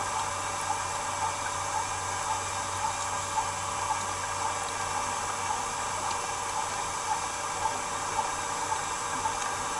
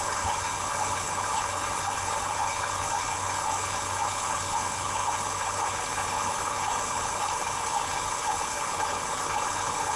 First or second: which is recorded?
first